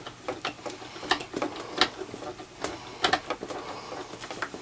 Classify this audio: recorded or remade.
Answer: recorded